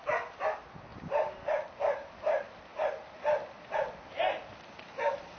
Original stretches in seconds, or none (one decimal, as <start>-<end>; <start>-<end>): 0.0-0.9; 1.5-5.4